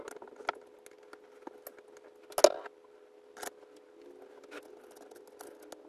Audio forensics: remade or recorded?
recorded